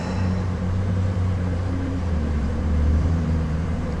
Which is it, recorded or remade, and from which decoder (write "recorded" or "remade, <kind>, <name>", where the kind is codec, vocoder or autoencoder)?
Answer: remade, vocoder, BigVGAN v2